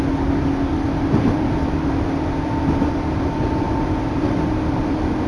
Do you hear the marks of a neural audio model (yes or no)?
no